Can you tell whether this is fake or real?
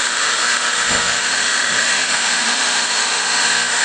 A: fake